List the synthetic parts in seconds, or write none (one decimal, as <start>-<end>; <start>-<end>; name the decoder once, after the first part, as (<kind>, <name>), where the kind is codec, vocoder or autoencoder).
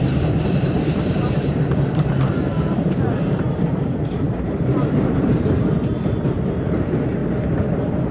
0.0-7.2 (vocoder, BigVGAN v2)